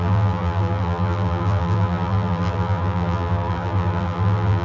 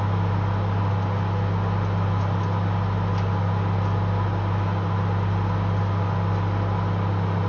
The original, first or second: second